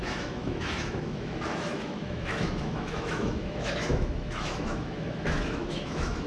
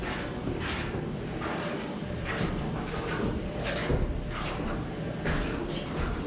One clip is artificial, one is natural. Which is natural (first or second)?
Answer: second